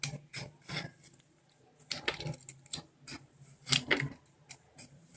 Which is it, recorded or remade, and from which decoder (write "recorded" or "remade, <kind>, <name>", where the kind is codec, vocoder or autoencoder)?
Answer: recorded